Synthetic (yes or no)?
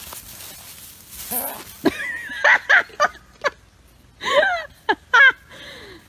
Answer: no